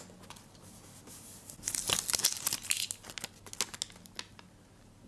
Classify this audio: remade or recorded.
recorded